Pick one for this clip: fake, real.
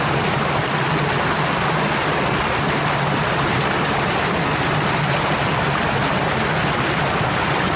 real